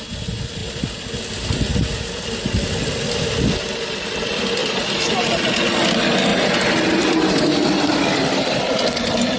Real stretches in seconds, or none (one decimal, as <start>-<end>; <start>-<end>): 0.0-9.4